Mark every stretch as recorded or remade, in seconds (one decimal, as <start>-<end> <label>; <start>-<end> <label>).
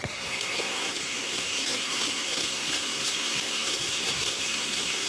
0.0-5.1 remade